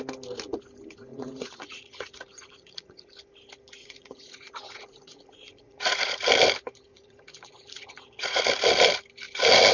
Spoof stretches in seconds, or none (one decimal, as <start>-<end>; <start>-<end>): 1.1-3.1; 3.8-6.1; 6.9-8.4